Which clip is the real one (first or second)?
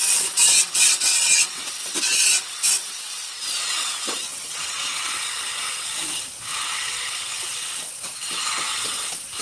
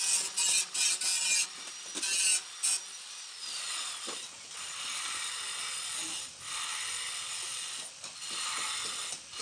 second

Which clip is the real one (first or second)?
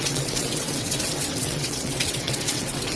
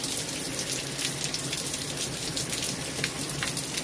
second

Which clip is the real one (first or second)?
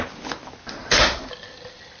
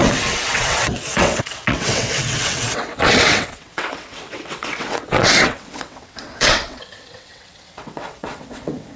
first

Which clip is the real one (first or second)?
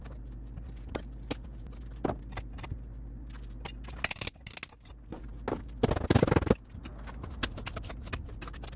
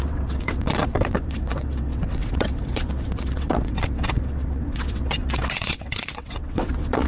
first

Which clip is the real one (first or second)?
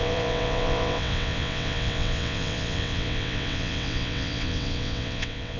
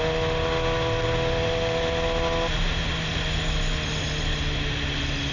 second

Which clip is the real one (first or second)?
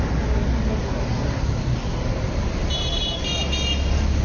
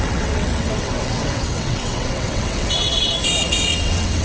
first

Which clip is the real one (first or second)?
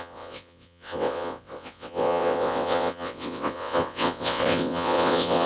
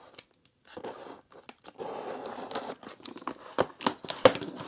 second